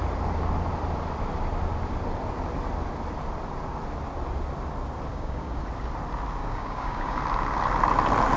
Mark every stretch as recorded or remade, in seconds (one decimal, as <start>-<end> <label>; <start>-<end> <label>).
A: 0.0-5.1 recorded; 5.1-5.6 remade; 5.6-6.4 recorded; 6.4-7.2 remade; 7.2-8.4 recorded